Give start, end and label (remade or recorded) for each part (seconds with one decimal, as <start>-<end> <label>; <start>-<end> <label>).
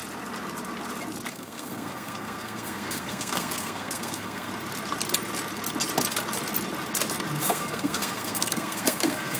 0.0-1.3 recorded; 1.3-4.5 remade; 4.5-7.4 recorded; 7.4-9.4 remade